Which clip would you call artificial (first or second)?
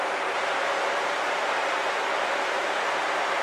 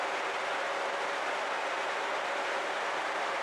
first